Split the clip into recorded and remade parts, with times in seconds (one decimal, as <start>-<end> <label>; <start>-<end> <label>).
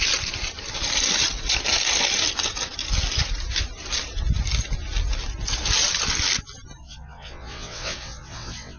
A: 0.0-6.8 recorded; 6.8-8.8 remade